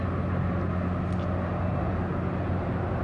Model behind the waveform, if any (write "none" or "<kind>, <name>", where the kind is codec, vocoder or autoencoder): none